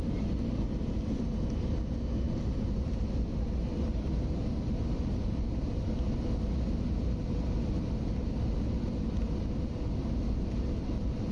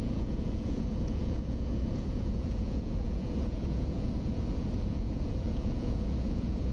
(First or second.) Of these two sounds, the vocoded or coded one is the second